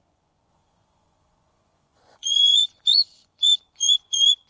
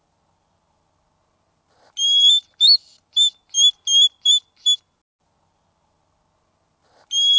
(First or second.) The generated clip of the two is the first